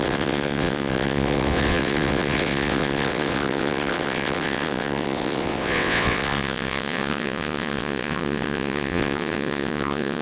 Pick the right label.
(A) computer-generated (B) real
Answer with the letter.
A